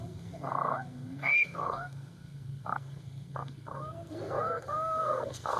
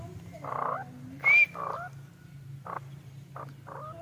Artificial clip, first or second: first